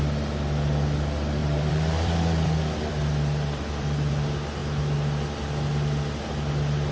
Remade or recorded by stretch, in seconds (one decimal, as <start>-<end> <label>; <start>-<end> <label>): 0.0-1.4 recorded; 1.4-4.1 remade; 4.1-6.9 recorded